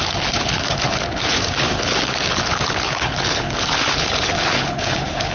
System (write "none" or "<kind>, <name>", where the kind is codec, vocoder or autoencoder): codec, HILCodec